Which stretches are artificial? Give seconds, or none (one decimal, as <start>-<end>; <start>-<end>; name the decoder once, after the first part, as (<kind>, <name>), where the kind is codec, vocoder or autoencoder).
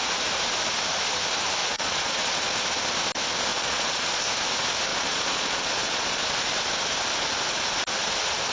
1.6-2.4 (vocoder, Vocos); 3.5-4.2; 4.9-6.2